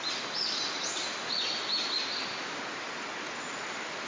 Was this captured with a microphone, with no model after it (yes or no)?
yes